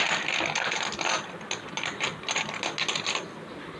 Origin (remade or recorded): recorded